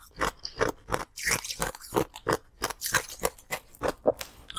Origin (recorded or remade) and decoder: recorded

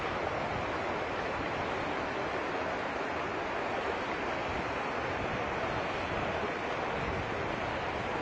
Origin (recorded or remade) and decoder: recorded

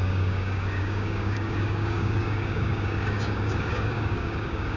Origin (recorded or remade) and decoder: remade, codec, DAC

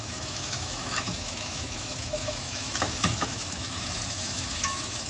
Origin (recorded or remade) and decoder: remade, autoencoder, DAC-VAE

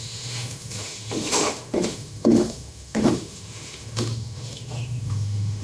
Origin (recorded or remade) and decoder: remade, autoencoder, DAC-VAE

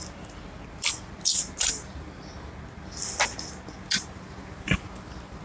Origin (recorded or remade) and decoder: recorded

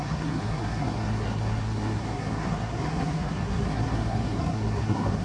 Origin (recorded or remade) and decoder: remade, codec, SNAC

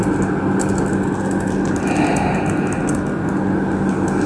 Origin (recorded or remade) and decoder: recorded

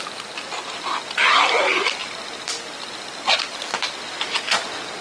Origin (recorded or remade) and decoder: recorded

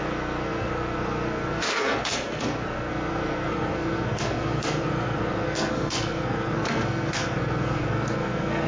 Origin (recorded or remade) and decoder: remade, codec, SNAC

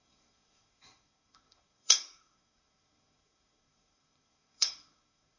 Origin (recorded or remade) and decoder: remade, codec, SNAC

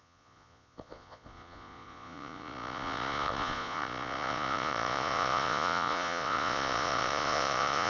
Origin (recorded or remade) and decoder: remade, vocoder, Vocos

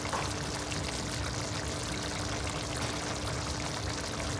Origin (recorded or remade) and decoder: recorded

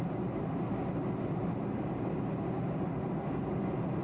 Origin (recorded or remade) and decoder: recorded